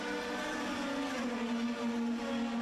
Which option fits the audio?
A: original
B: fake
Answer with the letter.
A